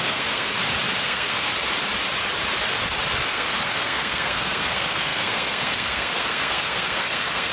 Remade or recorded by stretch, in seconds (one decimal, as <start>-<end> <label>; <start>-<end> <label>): 0.0-0.5 remade; 0.5-1.0 recorded; 1.0-1.5 remade; 1.5-3.2 recorded; 3.2-7.5 remade